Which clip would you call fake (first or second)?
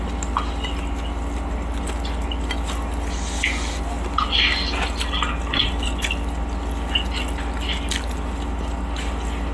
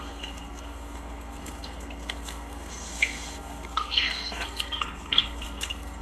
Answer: second